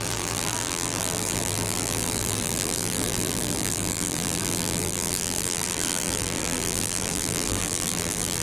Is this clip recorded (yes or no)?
no